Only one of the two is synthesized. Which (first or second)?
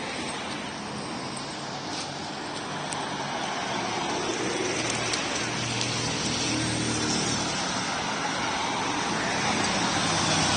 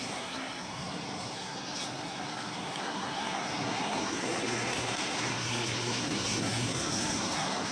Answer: second